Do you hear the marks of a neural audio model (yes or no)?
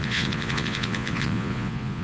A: yes